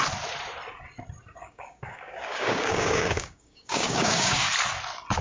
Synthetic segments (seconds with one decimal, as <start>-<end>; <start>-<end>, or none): 1.4-4.5